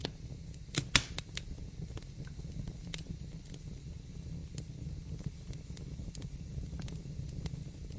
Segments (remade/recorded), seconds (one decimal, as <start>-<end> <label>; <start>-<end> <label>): 0.0-8.0 recorded